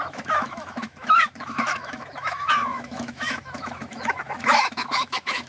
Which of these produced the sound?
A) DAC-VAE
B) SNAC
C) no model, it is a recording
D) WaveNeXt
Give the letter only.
A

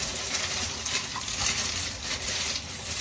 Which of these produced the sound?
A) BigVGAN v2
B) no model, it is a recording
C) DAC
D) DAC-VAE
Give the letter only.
B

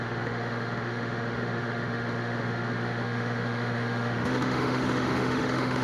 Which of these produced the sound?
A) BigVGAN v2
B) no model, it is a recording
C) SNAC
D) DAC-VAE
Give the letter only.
D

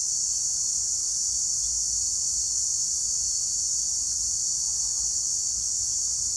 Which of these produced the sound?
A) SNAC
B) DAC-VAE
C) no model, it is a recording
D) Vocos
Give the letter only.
C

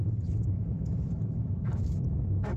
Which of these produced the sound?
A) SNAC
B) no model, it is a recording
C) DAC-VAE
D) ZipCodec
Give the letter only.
C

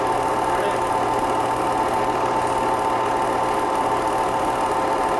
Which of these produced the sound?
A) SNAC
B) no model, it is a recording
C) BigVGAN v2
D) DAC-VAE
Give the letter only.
B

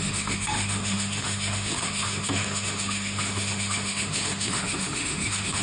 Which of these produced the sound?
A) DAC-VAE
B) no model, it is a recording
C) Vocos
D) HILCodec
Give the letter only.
A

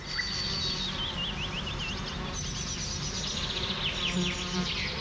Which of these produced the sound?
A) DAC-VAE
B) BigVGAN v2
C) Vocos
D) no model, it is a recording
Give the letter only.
D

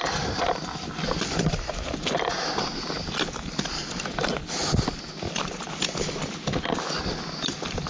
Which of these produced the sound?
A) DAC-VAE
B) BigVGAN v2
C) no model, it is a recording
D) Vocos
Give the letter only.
C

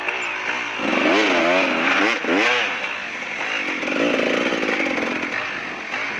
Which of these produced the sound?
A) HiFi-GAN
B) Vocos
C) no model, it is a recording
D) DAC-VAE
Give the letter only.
C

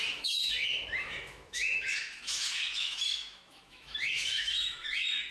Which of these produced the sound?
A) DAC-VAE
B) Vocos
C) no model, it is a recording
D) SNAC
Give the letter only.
A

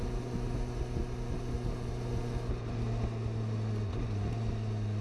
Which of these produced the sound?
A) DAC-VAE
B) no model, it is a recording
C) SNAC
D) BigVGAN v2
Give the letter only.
B